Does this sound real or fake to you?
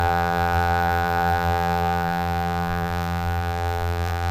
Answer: fake